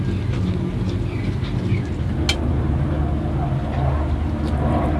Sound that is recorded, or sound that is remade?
recorded